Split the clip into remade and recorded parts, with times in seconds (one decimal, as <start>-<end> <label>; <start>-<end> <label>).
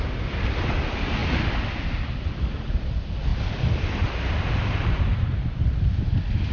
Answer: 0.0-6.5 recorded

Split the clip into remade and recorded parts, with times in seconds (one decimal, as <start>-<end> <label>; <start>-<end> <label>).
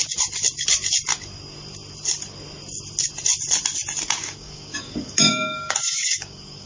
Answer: 0.0-4.2 recorded; 4.2-6.7 remade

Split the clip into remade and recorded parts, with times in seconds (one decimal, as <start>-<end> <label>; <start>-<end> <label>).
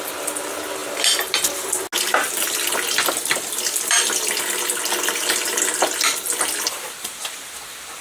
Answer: 0.0-0.8 remade; 0.8-2.3 recorded; 2.3-8.0 remade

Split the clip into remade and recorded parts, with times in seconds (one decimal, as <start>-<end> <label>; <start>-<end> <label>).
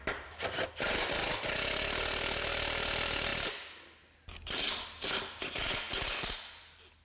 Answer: 0.0-7.0 recorded